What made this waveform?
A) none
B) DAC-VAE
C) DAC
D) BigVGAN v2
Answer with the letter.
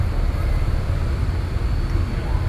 A